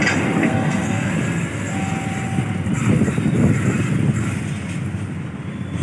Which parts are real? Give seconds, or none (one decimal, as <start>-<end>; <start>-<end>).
0.0-0.4; 1.1-5.8